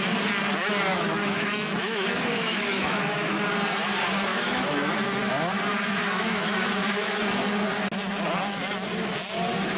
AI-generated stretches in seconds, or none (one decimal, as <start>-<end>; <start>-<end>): 0.9-3.3; 4.3-4.9; 5.7-7.2